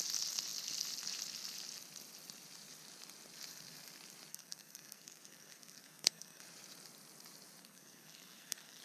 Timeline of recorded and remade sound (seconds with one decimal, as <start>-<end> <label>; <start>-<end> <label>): 0.0-4.3 recorded; 4.3-6.4 remade; 6.4-7.6 recorded; 7.6-8.8 remade